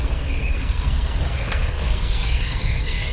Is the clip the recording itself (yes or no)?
no